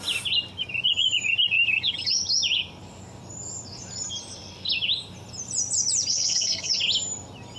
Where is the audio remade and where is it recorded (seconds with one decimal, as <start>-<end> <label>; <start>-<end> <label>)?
0.0-6.1 recorded; 6.1-6.7 remade; 6.7-7.6 recorded